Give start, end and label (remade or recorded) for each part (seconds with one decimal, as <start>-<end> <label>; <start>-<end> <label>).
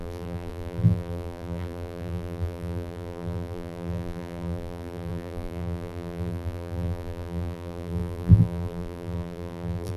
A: 0.0-10.0 remade